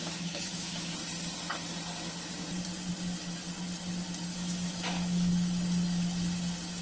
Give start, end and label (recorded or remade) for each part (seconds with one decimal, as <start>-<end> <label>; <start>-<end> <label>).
0.0-0.9 remade; 0.9-4.3 recorded; 4.3-5.3 remade; 5.3-6.8 recorded